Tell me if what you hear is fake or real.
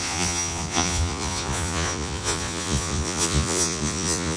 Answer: fake